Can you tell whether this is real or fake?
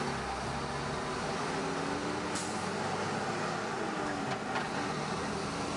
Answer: real